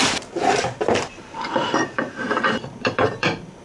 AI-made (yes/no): yes